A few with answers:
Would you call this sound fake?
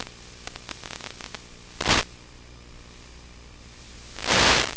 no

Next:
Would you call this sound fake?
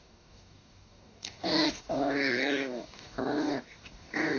yes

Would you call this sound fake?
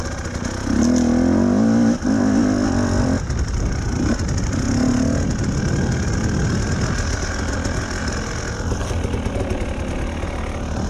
no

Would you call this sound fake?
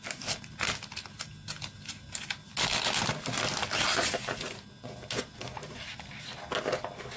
no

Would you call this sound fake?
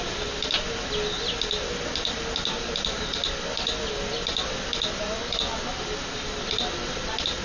no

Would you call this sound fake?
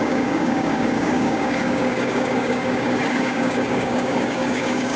yes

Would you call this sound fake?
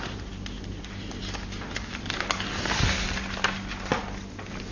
no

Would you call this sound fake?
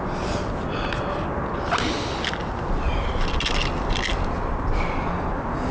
no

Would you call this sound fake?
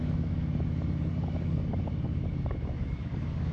yes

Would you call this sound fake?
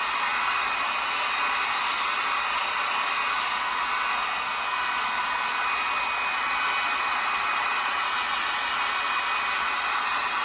no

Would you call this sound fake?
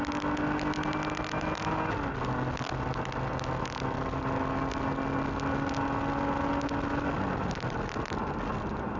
no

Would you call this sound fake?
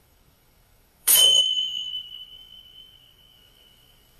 yes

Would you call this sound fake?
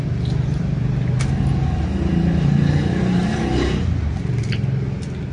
no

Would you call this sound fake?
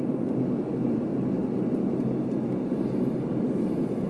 no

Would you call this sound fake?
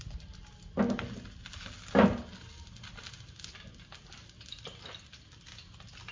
no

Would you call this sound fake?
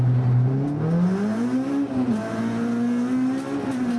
no